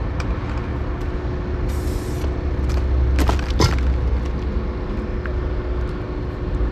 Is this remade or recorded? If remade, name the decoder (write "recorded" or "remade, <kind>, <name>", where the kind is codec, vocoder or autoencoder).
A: recorded